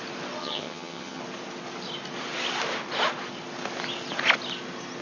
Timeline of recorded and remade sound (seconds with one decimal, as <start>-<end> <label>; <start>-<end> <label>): 0.0-0.4 recorded; 0.4-1.2 remade; 1.2-5.0 recorded